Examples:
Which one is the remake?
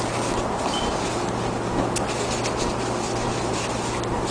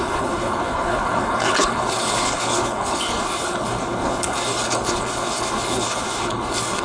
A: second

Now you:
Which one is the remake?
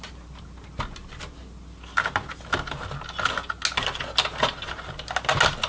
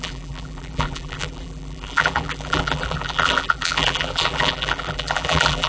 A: second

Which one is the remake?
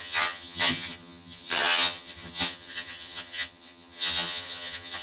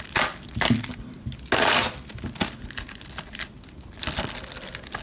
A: first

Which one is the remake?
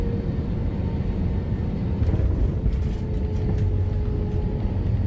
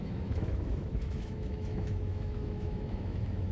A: second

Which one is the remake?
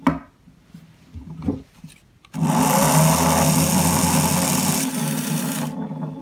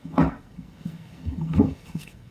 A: second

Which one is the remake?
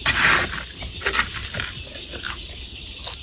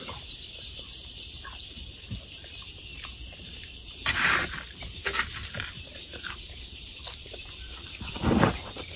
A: second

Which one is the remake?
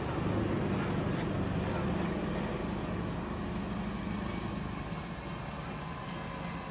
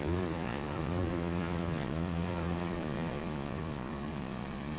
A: second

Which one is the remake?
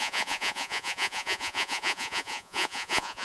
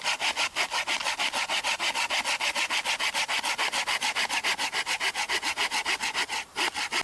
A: first